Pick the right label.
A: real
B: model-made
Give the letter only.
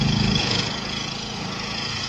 B